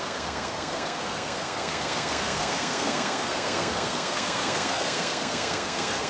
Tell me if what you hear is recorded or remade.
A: remade